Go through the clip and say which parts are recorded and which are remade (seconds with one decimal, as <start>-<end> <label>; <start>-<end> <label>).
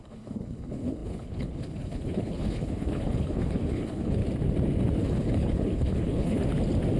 0.0-4.2 remade; 4.2-5.0 recorded; 5.0-6.4 remade; 6.4-7.0 recorded